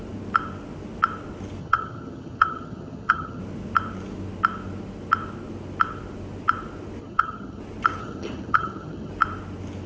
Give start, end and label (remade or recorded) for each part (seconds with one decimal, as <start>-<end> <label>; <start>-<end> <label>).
0.0-1.6 recorded; 1.6-3.4 remade; 3.4-7.0 recorded; 7.0-7.6 remade; 7.6-8.0 recorded; 8.0-9.1 remade; 9.1-9.9 recorded